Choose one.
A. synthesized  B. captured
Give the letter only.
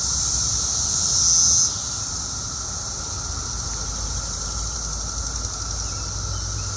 B